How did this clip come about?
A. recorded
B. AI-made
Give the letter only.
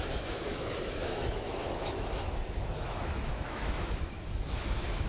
B